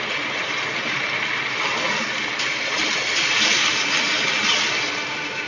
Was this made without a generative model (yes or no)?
yes